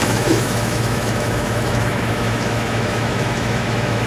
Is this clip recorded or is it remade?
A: remade